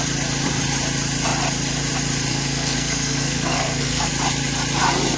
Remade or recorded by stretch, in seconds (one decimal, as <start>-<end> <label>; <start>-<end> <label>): 0.0-2.3 recorded; 2.3-4.1 remade; 4.1-5.2 recorded